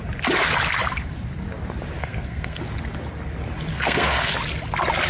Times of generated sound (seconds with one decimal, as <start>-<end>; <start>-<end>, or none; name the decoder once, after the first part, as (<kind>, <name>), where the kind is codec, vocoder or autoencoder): 2.0-2.6 (codec, SNAC); 3.7-4.3